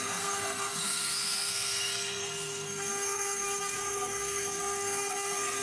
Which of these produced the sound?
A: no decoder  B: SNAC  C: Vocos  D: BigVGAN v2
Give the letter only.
B